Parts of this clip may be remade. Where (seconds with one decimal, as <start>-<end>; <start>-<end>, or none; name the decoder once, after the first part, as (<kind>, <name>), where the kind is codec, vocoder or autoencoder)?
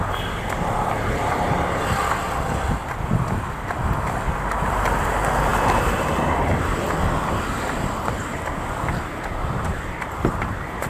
5.5-6.8 (vocoder, BigVGAN v2); 9.4-10.9